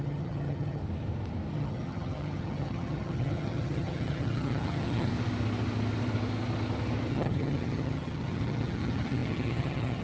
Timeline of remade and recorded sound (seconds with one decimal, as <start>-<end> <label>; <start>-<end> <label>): 0.0-0.8 remade; 0.8-1.5 recorded; 1.5-5.1 remade; 5.1-7.1 recorded; 7.1-10.0 remade